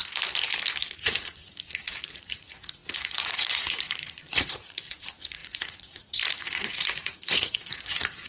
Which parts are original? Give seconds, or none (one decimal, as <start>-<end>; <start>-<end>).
0.0-0.9